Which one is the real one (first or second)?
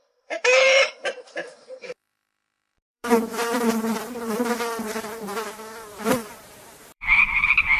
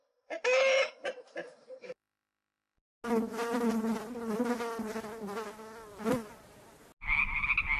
second